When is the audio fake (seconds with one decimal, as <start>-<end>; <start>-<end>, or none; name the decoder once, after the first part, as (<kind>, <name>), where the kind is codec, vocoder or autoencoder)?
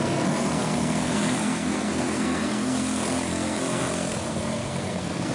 0.0-5.3 (codec, SNAC)